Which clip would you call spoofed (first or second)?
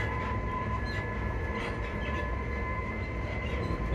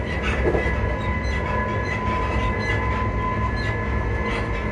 first